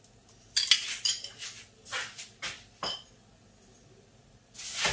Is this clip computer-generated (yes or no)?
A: no